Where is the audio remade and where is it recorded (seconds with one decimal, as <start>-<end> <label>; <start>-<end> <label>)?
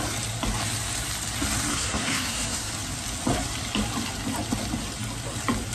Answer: 0.0-1.7 recorded; 1.7-2.7 remade; 2.7-5.7 recorded